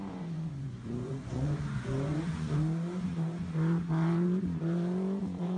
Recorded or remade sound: remade